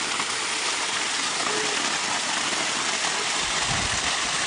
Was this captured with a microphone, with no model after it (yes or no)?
yes